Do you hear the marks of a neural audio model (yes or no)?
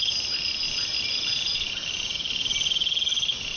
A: no